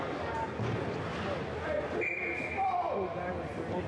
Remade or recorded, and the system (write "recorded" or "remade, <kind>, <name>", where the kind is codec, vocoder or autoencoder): recorded